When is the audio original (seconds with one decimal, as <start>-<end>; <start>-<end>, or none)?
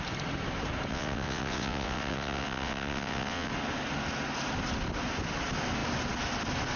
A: 0.0-0.9; 3.5-6.8